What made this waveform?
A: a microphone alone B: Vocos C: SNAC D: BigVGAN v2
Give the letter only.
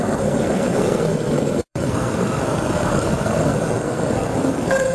C